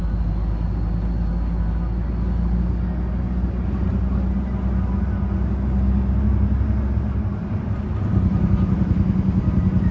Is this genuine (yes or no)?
yes